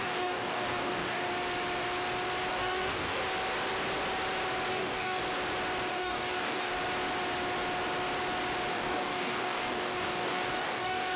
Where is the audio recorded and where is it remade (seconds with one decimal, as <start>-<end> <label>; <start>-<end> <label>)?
0.0-1.3 remade; 1.3-2.5 recorded; 2.5-3.2 remade; 3.2-4.7 recorded; 4.7-5.2 remade; 5.2-5.9 recorded; 5.9-6.7 remade; 6.7-8.7 recorded; 8.7-11.2 remade